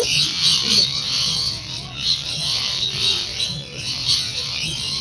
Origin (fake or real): fake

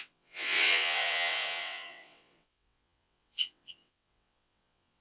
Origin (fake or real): fake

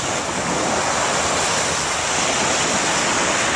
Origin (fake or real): real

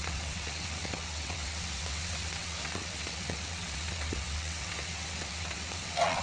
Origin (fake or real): fake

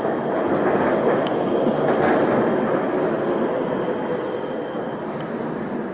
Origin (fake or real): real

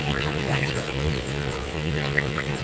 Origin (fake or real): fake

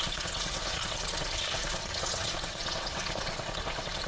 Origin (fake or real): fake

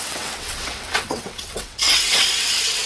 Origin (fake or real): fake